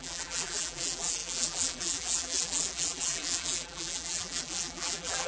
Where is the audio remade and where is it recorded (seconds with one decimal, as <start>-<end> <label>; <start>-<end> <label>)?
0.0-5.3 remade